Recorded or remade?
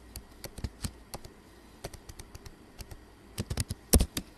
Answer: recorded